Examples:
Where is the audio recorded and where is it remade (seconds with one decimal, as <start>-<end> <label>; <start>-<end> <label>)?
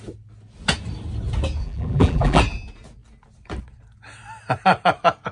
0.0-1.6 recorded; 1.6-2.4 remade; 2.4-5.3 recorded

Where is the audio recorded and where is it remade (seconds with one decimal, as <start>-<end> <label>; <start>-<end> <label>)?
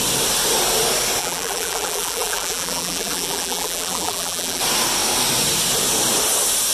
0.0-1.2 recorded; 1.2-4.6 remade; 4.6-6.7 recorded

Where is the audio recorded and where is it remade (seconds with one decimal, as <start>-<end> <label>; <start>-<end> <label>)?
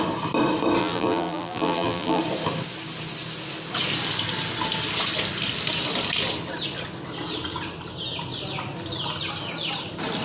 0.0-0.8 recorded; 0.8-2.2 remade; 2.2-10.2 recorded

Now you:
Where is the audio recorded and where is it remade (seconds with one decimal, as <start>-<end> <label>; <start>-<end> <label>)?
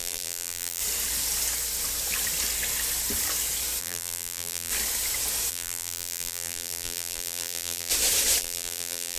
0.0-0.8 remade; 0.8-3.8 recorded; 3.8-4.7 remade; 4.7-5.5 recorded; 5.5-7.9 remade; 7.9-8.4 recorded; 8.4-9.2 remade